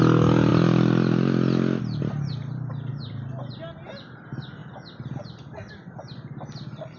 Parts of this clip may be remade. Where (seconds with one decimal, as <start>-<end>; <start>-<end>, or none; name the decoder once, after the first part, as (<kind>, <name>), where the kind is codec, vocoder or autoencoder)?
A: none